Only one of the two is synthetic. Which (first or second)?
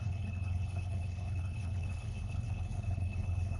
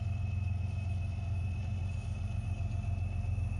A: first